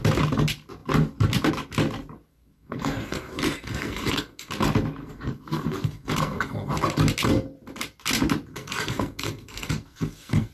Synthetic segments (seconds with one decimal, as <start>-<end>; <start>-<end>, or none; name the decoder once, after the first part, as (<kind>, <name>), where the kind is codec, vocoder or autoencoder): 2.3-4.5 (codec, SNAC); 5.0-6.7; 8.5-10.5